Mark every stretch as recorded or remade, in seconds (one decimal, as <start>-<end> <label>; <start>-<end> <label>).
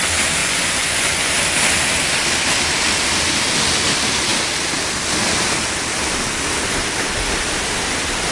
0.0-0.4 recorded; 0.4-1.3 remade; 1.3-8.3 recorded